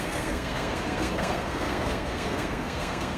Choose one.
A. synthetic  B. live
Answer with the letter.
A